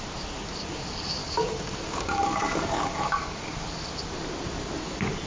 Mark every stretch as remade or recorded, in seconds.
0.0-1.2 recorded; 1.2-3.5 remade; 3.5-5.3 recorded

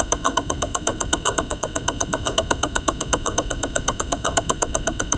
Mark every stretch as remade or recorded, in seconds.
0.0-5.2 remade

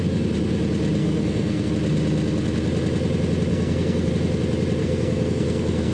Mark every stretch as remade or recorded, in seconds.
0.0-1.0 recorded; 1.0-1.7 remade; 1.7-3.5 recorded; 3.5-4.1 remade; 4.1-4.8 recorded; 4.8-5.9 remade

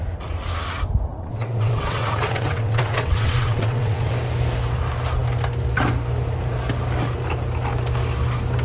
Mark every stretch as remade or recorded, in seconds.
0.0-1.1 recorded; 1.1-4.1 remade; 4.1-8.6 recorded

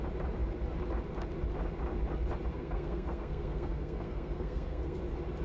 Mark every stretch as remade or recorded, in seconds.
0.0-2.5 recorded; 2.5-5.0 remade; 5.0-5.4 recorded

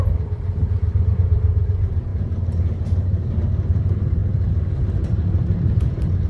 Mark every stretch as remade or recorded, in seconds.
0.0-0.6 remade; 0.6-1.1 recorded; 1.1-6.3 remade

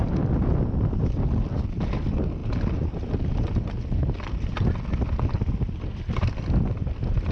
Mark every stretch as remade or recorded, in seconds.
0.0-7.3 recorded